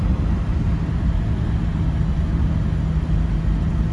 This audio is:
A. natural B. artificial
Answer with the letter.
A